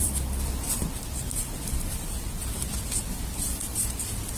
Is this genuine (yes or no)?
yes